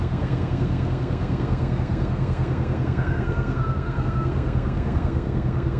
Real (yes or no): no